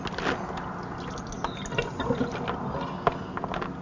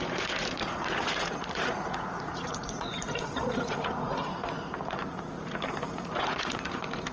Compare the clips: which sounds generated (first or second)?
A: second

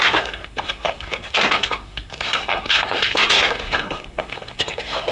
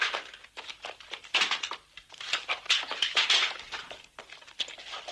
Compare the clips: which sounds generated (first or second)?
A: first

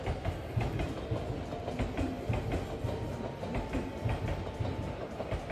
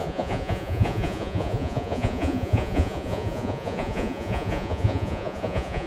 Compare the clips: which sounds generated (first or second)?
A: second